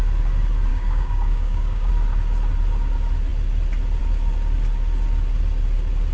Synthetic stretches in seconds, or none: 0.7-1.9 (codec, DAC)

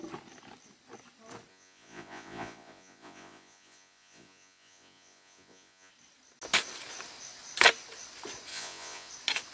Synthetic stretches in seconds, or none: 1.5-5.9 (vocoder, Vocos); 8.5-9.1

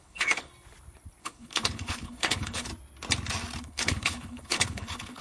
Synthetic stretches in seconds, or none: 0.0-0.5 (codec, HILCodec); 1.2-2.7; 3.6-5.2

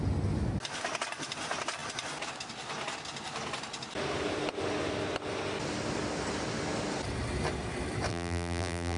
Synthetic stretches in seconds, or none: 8.1-9.0 (vocoder, BigVGAN v2)

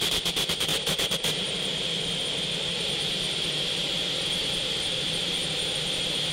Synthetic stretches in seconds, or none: 0.0-6.3 (vocoder, BigVGAN v2)